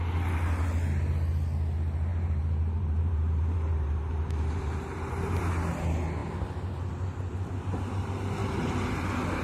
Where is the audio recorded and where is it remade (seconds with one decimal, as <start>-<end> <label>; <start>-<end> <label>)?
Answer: 0.0-2.1 recorded; 2.1-5.4 remade; 5.4-9.4 recorded